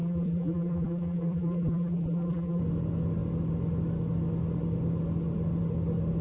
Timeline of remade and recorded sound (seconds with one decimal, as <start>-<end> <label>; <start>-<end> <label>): 0.0-2.6 remade; 2.6-6.2 recorded